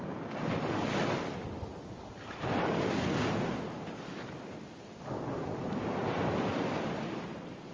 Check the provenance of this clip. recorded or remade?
recorded